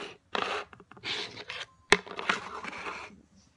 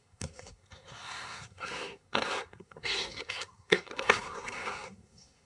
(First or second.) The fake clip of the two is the second